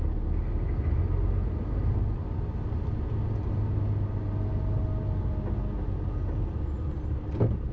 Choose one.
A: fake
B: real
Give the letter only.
B